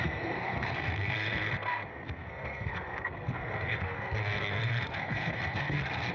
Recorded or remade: remade